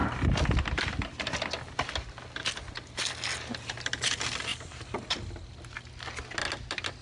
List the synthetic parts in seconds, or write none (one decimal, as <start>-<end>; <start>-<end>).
none